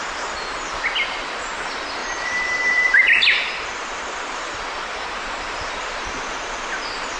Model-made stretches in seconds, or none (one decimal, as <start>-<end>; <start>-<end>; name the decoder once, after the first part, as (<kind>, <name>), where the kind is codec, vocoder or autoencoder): 1.5-7.2 (vocoder, BigVGAN v2)